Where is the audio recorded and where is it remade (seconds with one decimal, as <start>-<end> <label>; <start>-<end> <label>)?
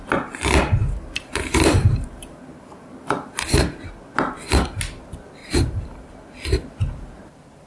0.0-0.8 recorded; 0.8-3.7 remade; 3.7-5.4 recorded; 5.4-6.1 remade; 6.1-7.7 recorded